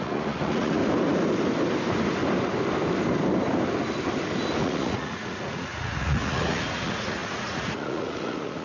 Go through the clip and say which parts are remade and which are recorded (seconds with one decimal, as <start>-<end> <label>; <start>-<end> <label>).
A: 0.0-0.8 remade; 0.8-4.6 recorded; 4.6-8.6 remade